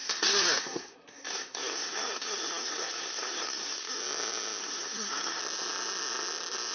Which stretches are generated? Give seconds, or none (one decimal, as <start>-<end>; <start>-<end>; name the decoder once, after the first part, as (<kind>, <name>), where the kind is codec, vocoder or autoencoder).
0.0-4.0 (codec, SNAC); 4.6-5.4